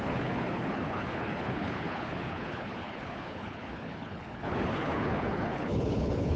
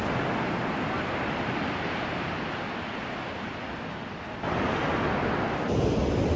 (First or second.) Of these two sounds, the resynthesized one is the first